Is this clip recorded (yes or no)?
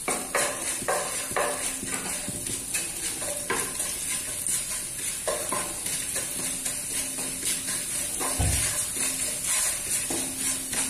yes